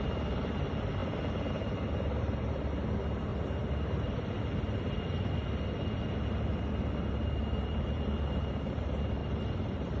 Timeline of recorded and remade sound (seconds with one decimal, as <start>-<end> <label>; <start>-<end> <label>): 0.0-3.3 recorded; 3.3-8.5 remade; 8.5-9.2 recorded; 9.2-10.0 remade